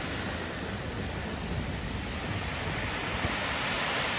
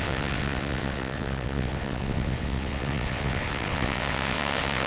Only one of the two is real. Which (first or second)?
first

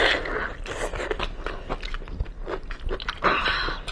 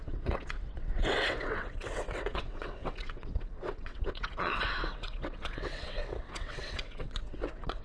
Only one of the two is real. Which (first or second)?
first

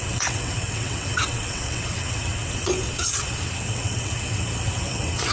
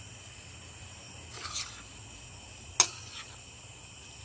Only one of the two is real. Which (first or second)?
second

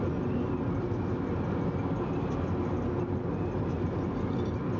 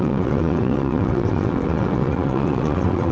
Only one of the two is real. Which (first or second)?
first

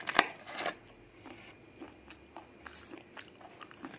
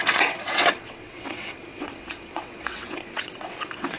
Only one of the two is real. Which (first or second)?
first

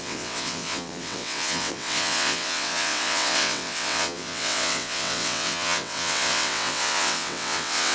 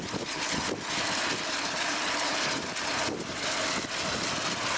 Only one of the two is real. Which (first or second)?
second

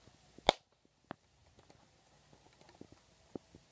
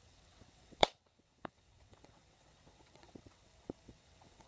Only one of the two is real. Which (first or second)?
first